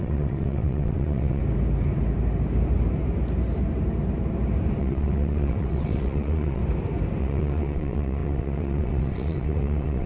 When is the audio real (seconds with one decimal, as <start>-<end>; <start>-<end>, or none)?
1.4-4.8; 6.6-7.2